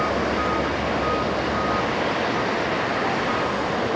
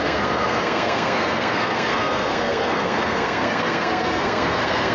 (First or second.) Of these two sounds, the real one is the first